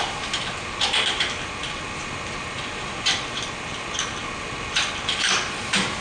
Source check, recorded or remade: recorded